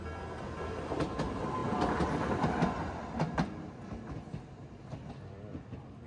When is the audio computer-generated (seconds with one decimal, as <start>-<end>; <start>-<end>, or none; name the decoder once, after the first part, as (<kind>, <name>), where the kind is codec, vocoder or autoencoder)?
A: none